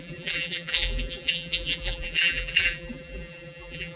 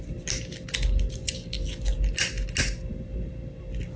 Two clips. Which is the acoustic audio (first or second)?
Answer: second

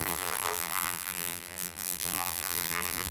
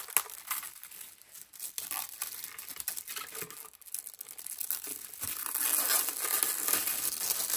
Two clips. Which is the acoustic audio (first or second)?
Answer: second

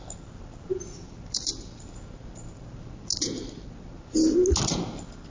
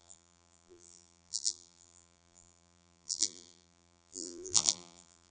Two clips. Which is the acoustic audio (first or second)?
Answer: first